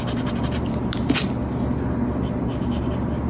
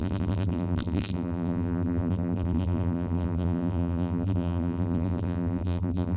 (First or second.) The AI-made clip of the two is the second